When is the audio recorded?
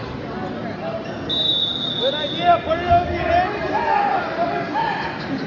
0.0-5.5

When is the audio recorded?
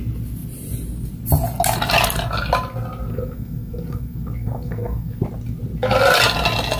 0.0-3.1; 5.2-6.8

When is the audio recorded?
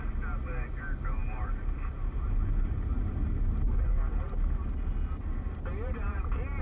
0.0-6.6